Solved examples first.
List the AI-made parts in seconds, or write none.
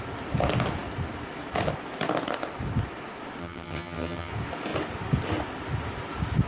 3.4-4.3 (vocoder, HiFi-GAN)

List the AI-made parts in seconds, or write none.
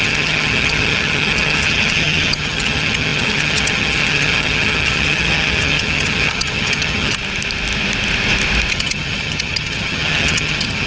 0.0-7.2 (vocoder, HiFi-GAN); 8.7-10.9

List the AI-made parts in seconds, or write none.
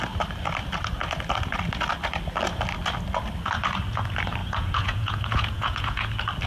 4.4-6.1 (vocoder, Vocos)